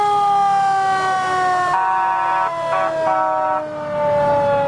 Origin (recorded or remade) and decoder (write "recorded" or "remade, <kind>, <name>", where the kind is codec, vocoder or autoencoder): recorded